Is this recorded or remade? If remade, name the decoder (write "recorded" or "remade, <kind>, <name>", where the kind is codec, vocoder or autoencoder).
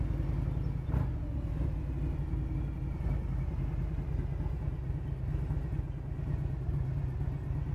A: recorded